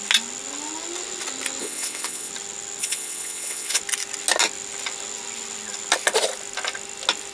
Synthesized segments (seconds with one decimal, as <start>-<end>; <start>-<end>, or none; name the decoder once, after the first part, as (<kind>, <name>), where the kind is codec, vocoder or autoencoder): 1.6-2.3 (vocoder, WaveNeXt); 2.8-3.8